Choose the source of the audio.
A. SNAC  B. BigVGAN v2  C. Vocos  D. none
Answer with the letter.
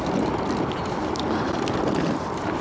D